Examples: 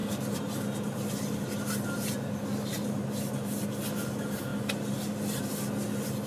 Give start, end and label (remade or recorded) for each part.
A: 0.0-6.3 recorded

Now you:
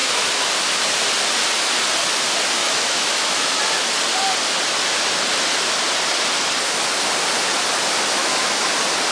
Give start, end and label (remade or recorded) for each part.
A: 0.0-0.5 remade; 0.5-2.6 recorded; 2.6-3.6 remade; 3.6-8.2 recorded; 8.2-8.7 remade; 8.7-9.1 recorded

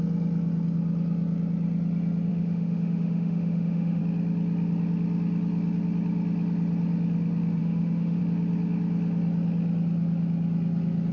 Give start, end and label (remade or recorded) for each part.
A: 0.0-2.3 recorded; 2.3-4.0 remade; 4.0-7.6 recorded; 7.6-8.2 remade; 8.2-11.1 recorded

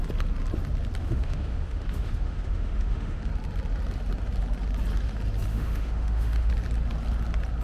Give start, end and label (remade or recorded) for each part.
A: 0.0-1.0 recorded; 1.0-3.2 remade; 3.2-5.5 recorded; 5.5-6.5 remade; 6.5-7.6 recorded

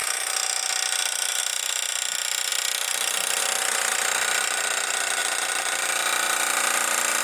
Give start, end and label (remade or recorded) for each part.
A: 0.0-7.2 recorded

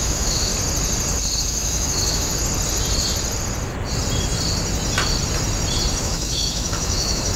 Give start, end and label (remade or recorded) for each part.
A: 0.0-0.5 remade; 0.5-1.4 recorded; 1.4-2.3 remade; 2.3-6.0 recorded; 6.0-7.4 remade